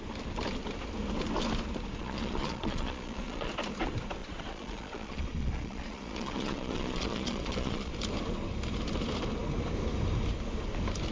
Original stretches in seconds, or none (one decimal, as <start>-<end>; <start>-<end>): 0.0-2.0; 3.5-4.2; 7.9-11.1